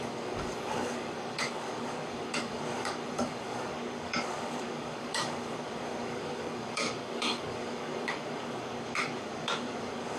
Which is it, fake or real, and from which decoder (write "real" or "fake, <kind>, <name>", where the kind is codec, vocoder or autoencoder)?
fake, codec, DAC